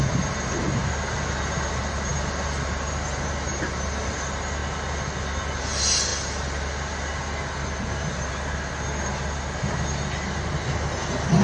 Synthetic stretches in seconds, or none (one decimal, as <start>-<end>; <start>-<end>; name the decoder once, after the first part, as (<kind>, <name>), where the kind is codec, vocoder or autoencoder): none